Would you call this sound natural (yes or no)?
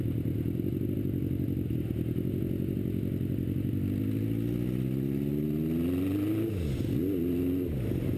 yes